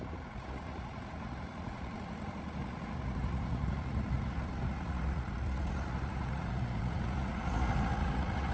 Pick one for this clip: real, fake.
fake